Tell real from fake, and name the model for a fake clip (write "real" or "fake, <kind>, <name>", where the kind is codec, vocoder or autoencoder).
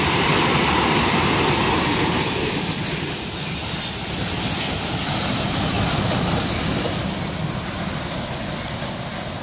real